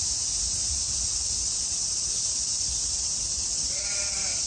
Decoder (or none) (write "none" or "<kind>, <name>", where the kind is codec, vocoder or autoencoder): none